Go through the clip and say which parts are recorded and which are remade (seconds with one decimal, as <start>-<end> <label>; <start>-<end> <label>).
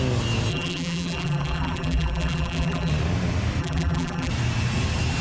0.0-0.5 recorded; 0.5-2.9 remade; 2.9-3.6 recorded; 3.6-4.3 remade; 4.3-5.2 recorded